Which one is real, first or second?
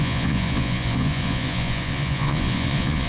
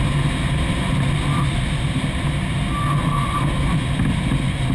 second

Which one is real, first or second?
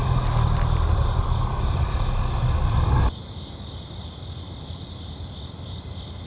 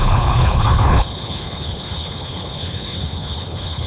first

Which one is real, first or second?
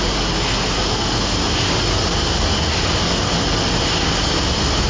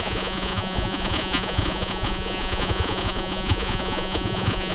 first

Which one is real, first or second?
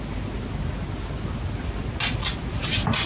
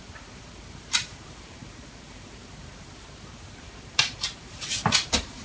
first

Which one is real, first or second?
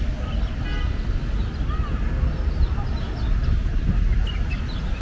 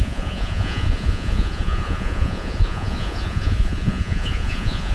first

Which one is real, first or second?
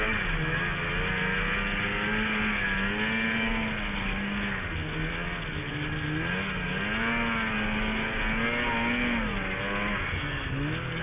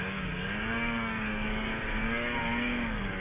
first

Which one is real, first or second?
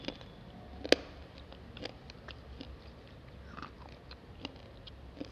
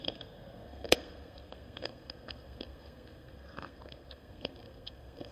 first